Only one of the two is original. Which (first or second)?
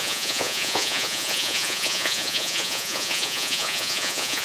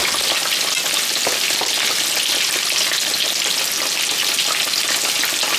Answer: second